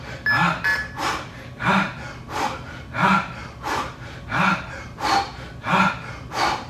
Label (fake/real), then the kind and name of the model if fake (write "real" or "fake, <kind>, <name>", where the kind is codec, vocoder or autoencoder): real